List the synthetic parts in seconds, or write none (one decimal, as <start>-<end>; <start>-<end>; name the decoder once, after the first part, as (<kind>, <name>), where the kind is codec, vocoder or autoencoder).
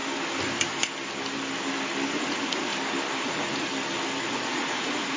2.1-2.7 (vocoder, Vocos); 3.2-3.7; 4.3-5.2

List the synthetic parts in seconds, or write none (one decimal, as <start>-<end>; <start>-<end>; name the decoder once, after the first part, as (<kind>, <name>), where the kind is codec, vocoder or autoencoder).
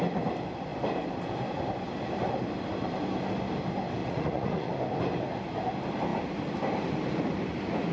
4.0-4.7 (vocoder, Vocos)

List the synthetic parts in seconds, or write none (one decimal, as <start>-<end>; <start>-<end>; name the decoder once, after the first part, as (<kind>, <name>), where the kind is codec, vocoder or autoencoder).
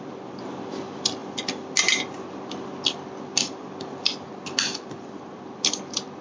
none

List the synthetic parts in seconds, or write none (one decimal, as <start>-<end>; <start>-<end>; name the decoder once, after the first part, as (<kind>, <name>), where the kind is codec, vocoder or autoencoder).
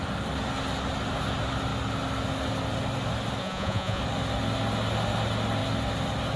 3.4-4.0 (vocoder, Vocos)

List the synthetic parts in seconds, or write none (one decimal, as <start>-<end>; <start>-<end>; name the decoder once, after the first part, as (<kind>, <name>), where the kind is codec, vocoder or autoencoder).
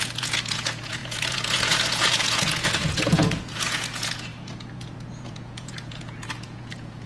0.0-7.1 (vocoder, Vocos)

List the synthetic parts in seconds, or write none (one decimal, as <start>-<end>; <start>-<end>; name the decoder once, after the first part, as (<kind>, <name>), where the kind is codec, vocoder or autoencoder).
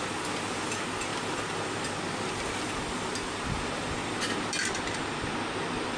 none